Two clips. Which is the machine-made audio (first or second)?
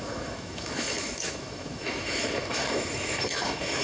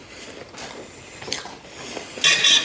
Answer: first